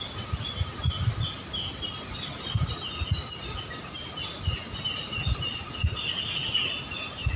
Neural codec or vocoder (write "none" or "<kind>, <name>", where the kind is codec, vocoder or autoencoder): none